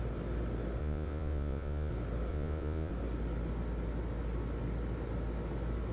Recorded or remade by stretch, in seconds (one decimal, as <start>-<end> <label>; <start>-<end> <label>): 0.0-0.8 recorded; 0.8-1.9 remade; 1.9-2.3 recorded; 2.3-2.9 remade; 2.9-5.9 recorded